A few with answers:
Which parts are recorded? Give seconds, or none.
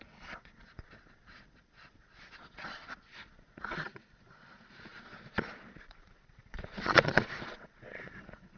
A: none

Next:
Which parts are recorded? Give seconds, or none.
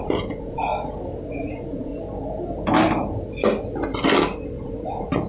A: 0.7-1.3; 1.9-4.6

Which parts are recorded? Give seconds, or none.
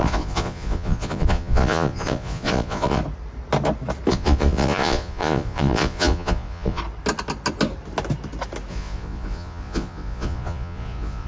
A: 3.0-4.1; 6.8-8.7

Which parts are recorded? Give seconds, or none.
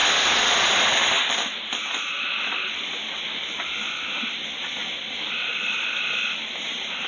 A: 0.0-7.1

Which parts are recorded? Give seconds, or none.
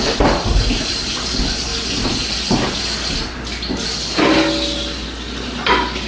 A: 0.0-6.1